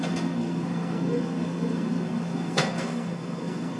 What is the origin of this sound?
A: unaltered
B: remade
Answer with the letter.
B